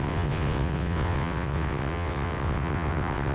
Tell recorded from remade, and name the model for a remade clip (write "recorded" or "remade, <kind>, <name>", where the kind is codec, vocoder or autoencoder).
remade, vocoder, WaveNeXt